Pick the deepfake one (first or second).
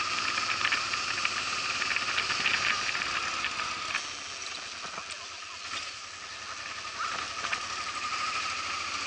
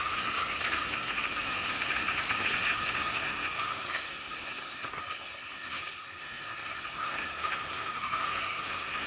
second